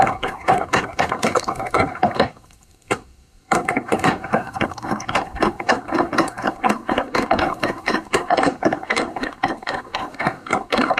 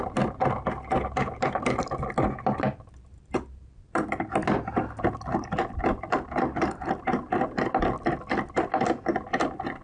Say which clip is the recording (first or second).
second